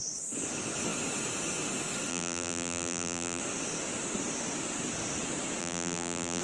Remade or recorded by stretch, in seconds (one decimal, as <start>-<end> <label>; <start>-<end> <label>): 0.0-2.1 recorded; 2.1-3.4 remade; 3.4-5.6 recorded; 5.6-6.4 remade